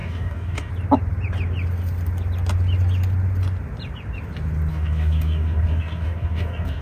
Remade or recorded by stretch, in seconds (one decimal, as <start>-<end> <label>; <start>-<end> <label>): 0.0-0.7 remade; 0.7-4.7 recorded; 4.7-6.8 remade